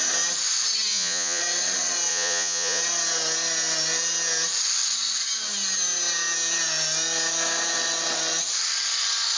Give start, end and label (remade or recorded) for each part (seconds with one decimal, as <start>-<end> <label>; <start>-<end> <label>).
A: 0.0-0.9 recorded; 0.9-1.4 remade; 1.4-2.1 recorded; 2.1-2.8 remade; 2.8-9.4 recorded